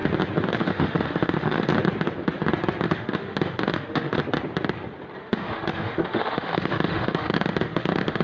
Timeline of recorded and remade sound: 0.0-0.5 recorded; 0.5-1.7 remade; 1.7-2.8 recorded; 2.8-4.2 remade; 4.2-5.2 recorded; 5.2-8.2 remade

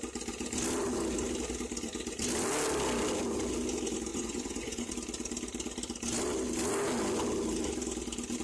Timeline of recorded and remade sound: 0.0-4.1 recorded; 4.1-4.9 remade; 4.9-8.4 recorded

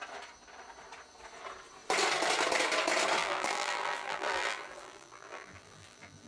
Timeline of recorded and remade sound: 0.0-3.2 recorded; 3.2-6.3 remade